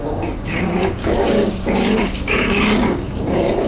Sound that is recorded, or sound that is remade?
remade